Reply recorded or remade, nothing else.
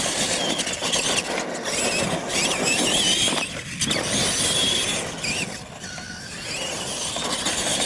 recorded